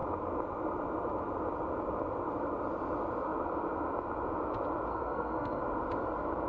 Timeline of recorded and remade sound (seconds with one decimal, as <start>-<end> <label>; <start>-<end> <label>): 0.0-4.9 recorded; 4.9-5.6 remade; 5.6-6.5 recorded